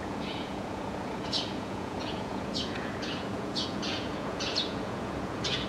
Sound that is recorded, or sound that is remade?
remade